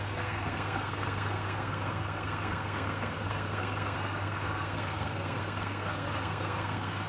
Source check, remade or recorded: remade